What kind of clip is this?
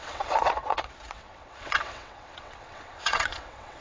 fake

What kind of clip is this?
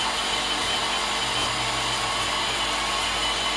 real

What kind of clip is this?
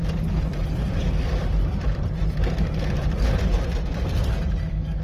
fake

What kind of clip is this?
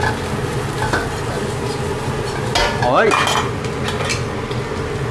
real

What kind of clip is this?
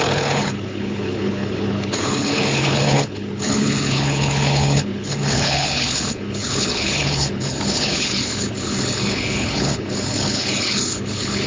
fake